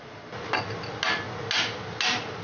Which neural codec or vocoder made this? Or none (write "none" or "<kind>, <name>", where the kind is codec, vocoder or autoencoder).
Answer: none